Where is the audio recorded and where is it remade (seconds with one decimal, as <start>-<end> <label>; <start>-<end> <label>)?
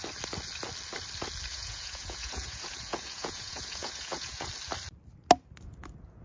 0.0-1.5 recorded; 1.5-4.5 remade; 4.5-6.2 recorded